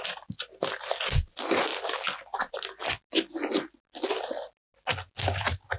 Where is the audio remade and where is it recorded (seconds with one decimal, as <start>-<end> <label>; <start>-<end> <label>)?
0.0-5.8 recorded